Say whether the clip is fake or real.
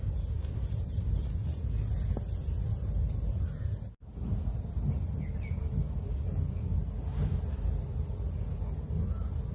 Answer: real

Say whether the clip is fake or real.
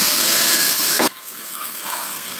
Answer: fake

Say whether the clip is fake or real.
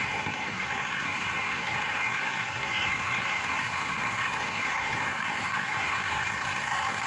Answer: fake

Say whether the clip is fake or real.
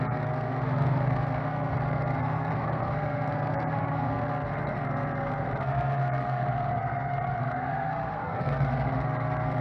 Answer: fake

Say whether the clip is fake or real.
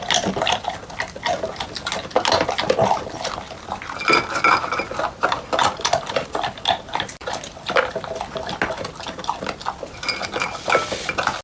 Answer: real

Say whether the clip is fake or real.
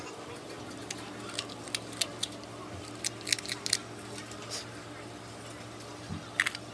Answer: real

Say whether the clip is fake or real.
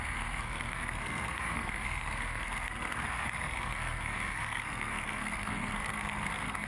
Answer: fake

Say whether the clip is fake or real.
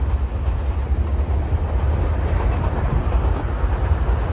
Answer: real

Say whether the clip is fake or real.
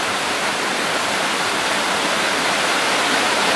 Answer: real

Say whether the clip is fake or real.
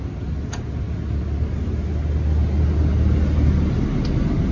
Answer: real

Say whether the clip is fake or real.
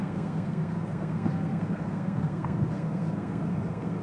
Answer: fake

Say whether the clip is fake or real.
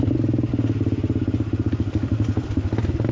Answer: real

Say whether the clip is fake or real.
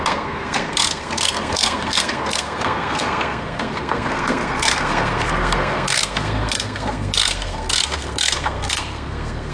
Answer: fake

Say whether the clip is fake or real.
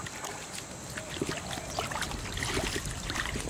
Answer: real